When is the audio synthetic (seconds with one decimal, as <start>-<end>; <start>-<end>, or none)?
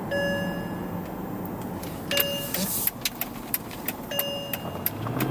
none